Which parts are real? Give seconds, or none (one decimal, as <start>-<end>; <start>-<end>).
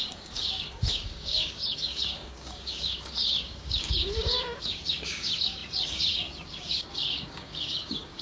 none